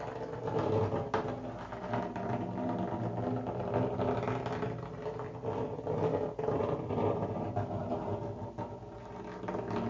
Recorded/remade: recorded